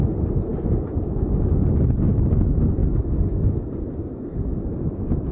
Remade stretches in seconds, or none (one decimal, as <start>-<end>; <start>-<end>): none